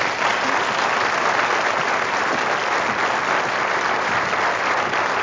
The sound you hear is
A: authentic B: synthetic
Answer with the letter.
A